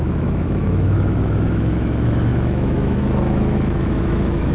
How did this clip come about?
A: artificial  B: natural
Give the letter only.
A